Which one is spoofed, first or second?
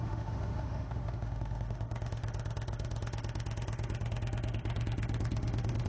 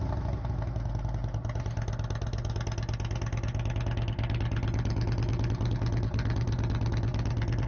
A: first